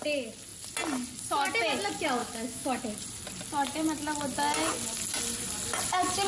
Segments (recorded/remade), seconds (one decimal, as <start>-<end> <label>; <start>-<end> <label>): 0.0-2.2 recorded; 2.2-2.8 remade; 2.8-6.3 recorded